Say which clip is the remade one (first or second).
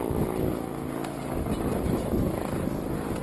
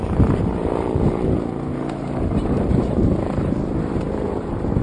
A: second